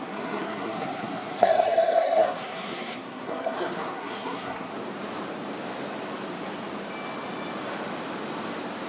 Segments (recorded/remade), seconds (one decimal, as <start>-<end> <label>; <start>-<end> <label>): 0.0-4.7 remade; 4.7-8.9 recorded